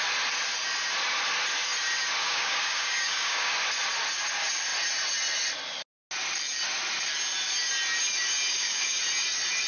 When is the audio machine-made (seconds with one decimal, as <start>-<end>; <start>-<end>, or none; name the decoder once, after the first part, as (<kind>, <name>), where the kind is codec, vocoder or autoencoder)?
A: 2.2-3.5 (codec, DAC); 8.5-9.0

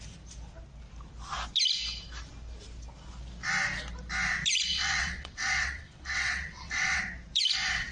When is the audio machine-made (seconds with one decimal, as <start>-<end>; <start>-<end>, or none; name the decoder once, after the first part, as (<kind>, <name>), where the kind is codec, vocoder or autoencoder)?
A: 4.7-7.0 (vocoder, WaveNeXt)

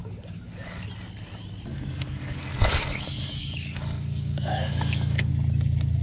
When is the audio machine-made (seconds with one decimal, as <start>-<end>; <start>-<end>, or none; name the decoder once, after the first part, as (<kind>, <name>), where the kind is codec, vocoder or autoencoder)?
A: 0.0-0.9 (codec, DAC); 1.7-5.3